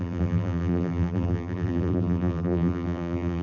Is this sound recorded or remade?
remade